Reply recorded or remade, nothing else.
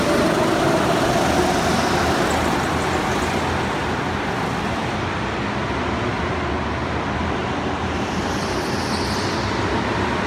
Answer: recorded